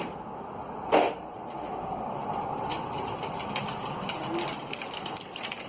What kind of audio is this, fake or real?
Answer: real